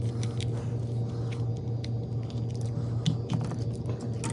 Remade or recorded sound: recorded